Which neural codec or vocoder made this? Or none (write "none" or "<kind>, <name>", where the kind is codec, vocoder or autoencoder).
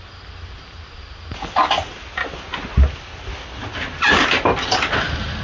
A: none